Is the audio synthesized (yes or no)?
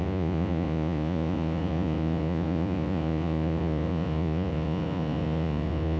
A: yes